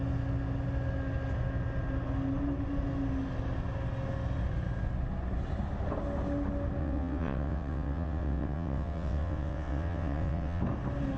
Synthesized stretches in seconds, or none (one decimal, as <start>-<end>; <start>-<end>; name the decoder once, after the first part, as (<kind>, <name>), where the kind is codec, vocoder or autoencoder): 6.8-10.6 (vocoder, WaveNeXt)